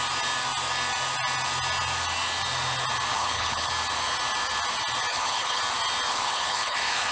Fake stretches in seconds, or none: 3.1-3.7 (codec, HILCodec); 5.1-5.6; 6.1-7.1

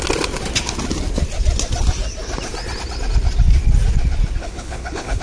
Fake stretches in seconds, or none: 4.4-5.2 (codec, HILCodec)

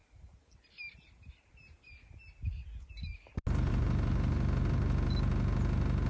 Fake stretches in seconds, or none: none

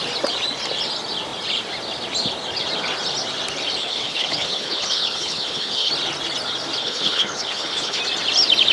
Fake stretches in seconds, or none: 3.8-5.9 (codec, HILCodec); 6.8-8.0

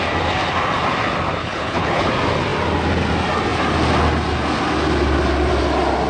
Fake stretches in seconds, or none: 1.4-2.1 (codec, HILCodec)

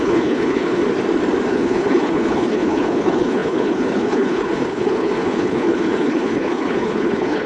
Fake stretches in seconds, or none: 0.0-0.8 (codec, HILCodec); 1.5-7.5

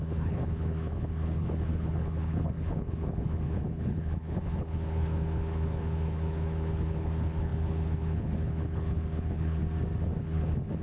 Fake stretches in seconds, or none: 0.0-9.6 (codec, HILCodec); 10.2-10.8

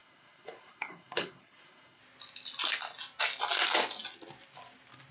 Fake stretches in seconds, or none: 0.0-2.0 (codec, HILCodec)